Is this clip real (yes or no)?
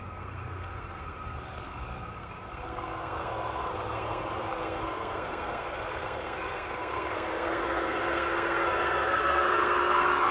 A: no